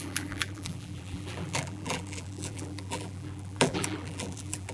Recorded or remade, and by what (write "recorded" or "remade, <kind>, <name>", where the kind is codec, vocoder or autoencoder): remade, vocoder, BigVGAN v2